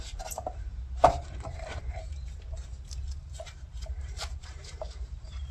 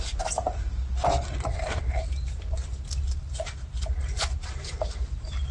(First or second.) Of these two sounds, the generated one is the first